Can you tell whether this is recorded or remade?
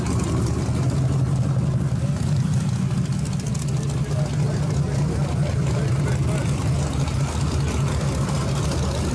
recorded